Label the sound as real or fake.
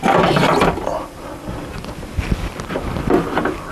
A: fake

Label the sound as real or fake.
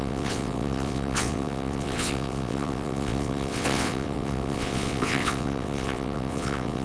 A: fake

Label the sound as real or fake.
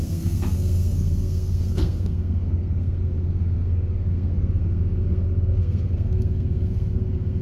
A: fake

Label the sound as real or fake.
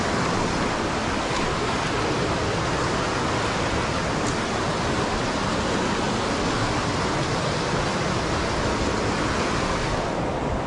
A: real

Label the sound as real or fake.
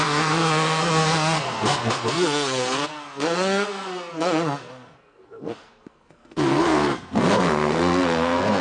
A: fake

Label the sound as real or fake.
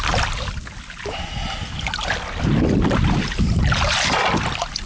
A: real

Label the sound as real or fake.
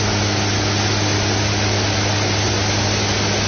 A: real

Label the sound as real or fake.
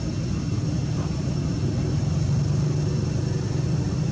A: real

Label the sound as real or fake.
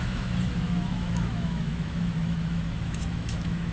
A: fake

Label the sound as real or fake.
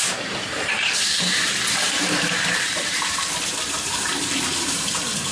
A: fake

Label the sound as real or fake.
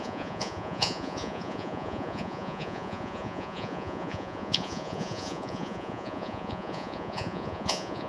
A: fake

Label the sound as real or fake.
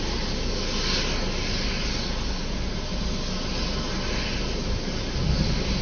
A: real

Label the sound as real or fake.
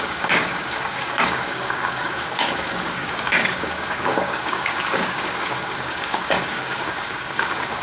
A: fake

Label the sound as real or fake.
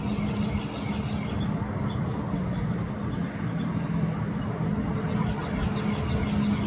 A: real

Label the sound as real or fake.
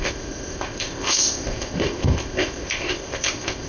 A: fake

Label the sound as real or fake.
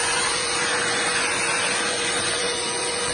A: fake